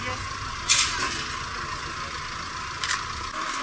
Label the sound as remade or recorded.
recorded